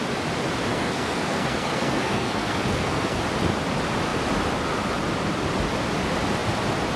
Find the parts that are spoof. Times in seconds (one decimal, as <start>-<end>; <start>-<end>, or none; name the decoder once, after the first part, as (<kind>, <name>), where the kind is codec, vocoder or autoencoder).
0.7-3.2 (codec, SNAC)